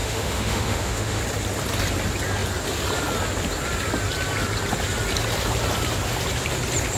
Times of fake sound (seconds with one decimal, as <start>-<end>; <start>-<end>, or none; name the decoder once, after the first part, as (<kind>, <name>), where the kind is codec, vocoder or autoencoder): 0.0-1.2 (autoencoder, DAC-VAE)